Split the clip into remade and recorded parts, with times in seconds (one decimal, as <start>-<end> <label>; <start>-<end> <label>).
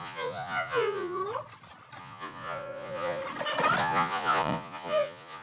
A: 0.0-1.2 remade; 1.2-2.0 recorded; 2.0-3.2 remade; 3.2-3.8 recorded; 3.8-5.4 remade